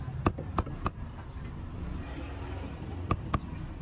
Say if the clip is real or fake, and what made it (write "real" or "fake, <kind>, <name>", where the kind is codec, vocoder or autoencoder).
real